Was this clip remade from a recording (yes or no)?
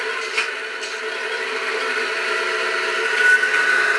no